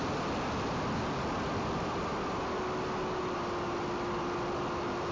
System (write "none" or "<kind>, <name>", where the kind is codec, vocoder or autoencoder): none